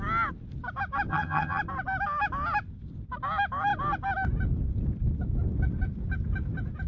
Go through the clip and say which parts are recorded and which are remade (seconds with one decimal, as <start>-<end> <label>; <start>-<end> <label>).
0.0-1.1 recorded; 1.1-1.6 remade; 1.6-6.9 recorded